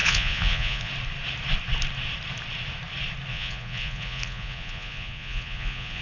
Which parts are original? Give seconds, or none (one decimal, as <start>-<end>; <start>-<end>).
0.9-3.3